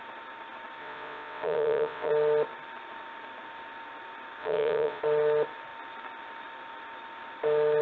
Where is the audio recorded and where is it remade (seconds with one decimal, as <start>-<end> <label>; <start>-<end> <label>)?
0.0-0.8 recorded; 0.8-2.1 remade; 2.1-4.4 recorded; 4.4-5.0 remade; 5.0-7.8 recorded